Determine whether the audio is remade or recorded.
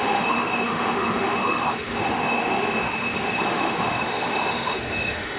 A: remade